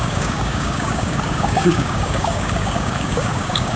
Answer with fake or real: fake